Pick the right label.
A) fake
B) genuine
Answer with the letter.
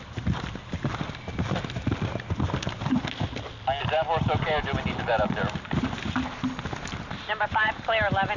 B